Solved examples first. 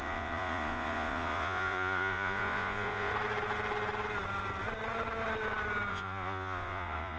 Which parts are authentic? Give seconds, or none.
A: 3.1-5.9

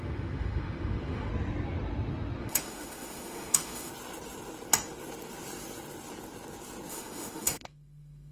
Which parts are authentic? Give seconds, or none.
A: 1.3-2.4; 3.9-6.9

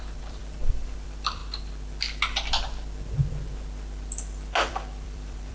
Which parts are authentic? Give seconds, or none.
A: 1.4-4.7

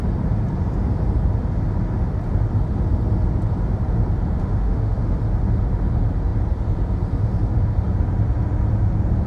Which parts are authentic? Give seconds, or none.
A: 0.0-4.4; 5.2-9.3

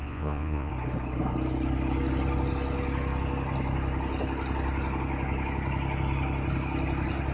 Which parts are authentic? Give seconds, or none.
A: 0.7-7.3

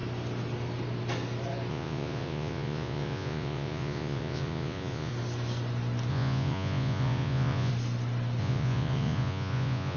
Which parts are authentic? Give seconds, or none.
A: 0.0-1.7; 5.1-6.1; 7.7-8.4

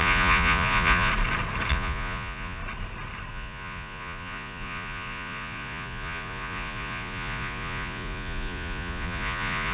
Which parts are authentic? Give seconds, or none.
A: 1.1-1.7; 2.6-3.3

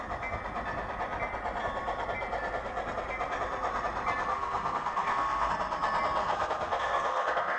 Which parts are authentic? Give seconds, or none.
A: 0.0-4.3; 5.5-6.2